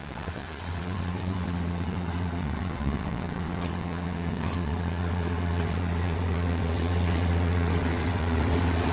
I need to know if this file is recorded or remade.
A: remade